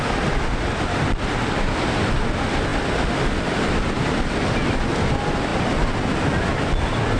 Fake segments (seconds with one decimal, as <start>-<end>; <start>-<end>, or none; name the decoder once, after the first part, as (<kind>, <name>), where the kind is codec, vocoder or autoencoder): none